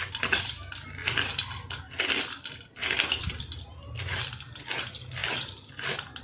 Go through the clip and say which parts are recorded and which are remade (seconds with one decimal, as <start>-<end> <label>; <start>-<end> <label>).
0.0-6.2 recorded